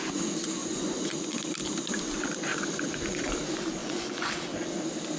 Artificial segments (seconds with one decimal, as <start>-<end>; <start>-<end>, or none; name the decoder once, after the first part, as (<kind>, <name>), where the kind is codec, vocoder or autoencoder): 0.6-1.1 (vocoder, Vocos); 2.5-3.3; 3.8-4.3